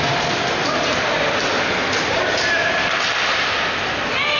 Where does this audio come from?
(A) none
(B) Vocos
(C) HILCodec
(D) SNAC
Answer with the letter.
A